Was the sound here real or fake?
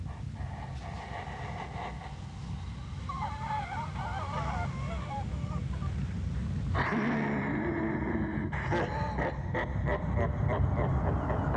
real